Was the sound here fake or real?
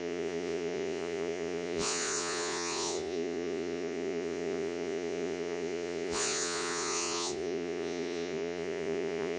fake